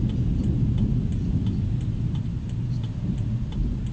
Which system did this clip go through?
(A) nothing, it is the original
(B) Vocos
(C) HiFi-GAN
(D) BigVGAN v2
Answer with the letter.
A